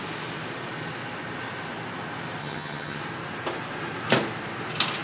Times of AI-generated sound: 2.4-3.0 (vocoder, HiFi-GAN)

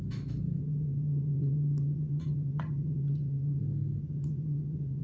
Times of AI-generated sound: 0.6-3.6 (vocoder, HiFi-GAN); 4.0-5.0

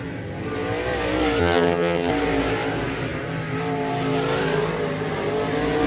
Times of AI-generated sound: 1.4-2.1 (vocoder, HiFi-GAN)

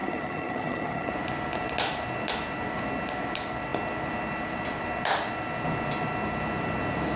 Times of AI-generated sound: 0.0-1.1 (vocoder, HiFi-GAN)